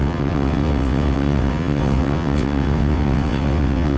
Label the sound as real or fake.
fake